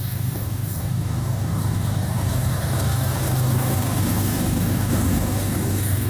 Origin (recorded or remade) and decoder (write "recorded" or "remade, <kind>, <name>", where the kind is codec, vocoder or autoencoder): remade, codec, DAC